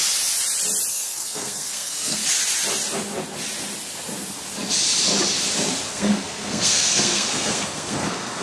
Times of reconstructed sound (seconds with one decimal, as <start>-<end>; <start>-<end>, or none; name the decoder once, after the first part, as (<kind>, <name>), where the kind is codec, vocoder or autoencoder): 0.9-2.2 (codec, SNAC); 5.9-8.4